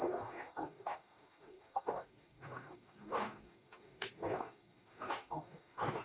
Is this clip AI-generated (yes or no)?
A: yes